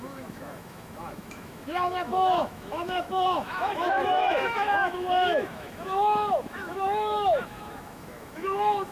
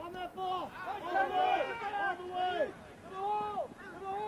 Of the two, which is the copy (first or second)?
first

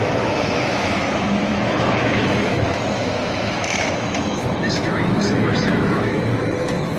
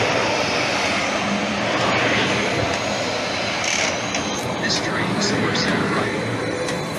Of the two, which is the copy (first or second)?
first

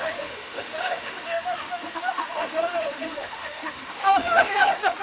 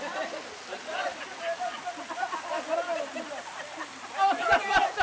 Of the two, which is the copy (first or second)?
first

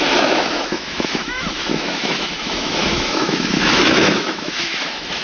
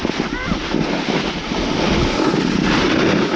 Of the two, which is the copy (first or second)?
first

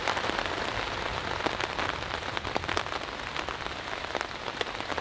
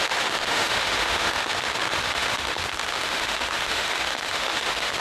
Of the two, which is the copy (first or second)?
second